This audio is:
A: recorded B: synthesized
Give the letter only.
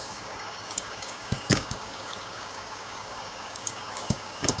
B